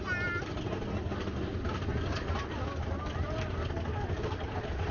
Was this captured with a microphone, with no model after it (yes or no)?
yes